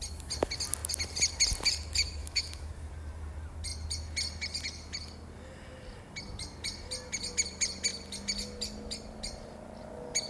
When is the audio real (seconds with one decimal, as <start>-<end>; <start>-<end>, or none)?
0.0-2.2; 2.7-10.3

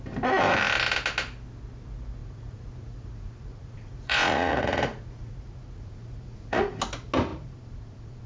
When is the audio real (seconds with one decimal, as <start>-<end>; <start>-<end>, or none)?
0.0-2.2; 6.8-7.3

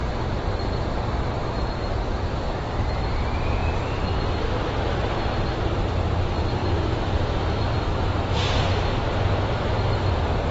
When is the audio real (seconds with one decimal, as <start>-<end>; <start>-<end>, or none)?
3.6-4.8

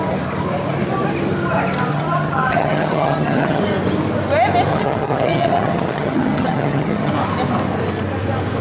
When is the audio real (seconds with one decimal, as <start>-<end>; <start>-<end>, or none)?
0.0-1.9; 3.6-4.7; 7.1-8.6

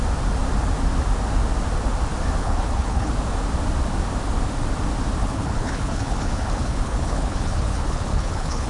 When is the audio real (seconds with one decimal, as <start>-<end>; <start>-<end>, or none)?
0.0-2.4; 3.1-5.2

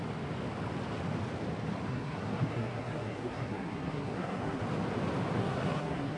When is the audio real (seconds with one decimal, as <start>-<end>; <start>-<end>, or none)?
0.0-1.9; 4.6-5.4